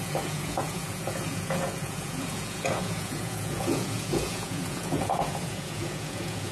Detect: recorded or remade remade